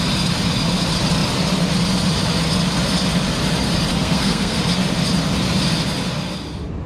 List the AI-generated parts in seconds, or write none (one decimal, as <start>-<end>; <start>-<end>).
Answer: 3.9-4.6